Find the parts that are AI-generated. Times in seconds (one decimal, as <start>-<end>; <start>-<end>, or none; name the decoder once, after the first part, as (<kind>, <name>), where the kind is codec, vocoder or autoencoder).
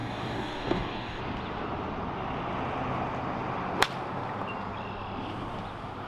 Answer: 0.0-1.2 (codec, DAC)